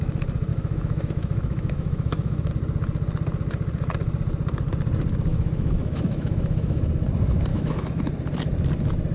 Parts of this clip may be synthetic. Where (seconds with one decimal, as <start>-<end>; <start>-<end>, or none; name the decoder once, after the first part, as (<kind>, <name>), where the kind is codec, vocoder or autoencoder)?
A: 0.5-2.5 (autoencoder, DAC-VAE); 5.3-6.9; 7.5-8.1